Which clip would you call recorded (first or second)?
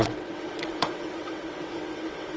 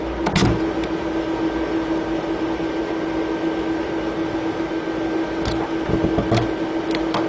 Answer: second